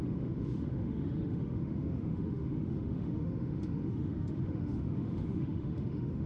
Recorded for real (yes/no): no